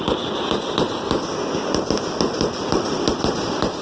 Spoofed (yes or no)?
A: no